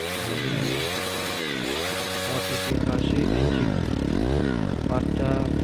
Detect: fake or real real